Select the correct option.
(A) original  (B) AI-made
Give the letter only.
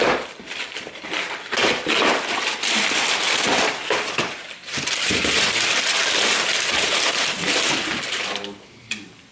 B